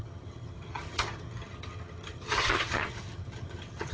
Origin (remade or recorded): remade